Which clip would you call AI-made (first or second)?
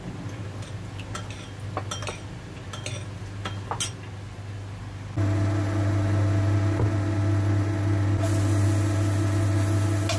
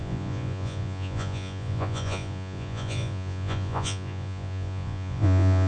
second